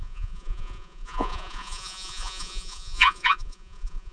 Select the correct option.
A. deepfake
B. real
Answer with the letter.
A